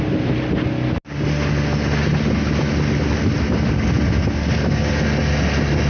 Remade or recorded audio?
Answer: recorded